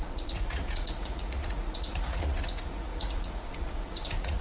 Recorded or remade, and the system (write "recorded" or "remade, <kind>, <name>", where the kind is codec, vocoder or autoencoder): remade, vocoder, Vocos